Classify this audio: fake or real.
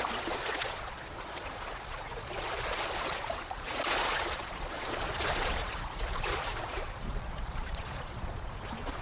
fake